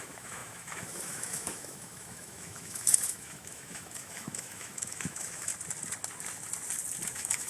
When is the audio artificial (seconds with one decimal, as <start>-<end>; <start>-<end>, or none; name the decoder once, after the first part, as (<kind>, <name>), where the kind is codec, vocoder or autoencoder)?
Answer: 0.0-5.5 (autoencoder, DAC-VAE); 7.1-7.5